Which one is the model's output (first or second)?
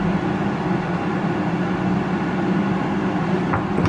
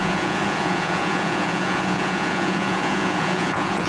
second